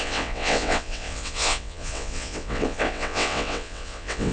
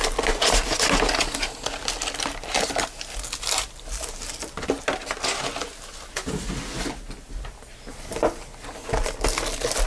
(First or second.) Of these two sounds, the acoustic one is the second